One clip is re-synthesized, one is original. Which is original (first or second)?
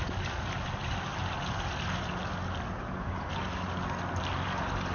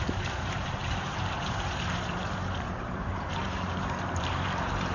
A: first